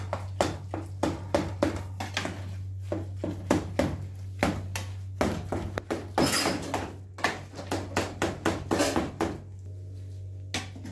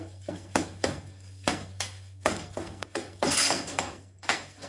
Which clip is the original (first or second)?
first